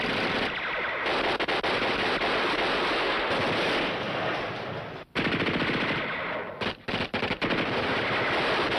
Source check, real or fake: real